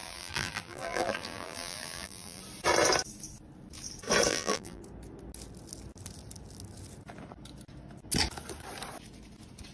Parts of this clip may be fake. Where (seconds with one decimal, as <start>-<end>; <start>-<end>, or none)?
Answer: 0.0-2.4; 4.3-4.8